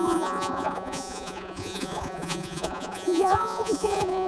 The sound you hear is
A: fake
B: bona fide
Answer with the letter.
A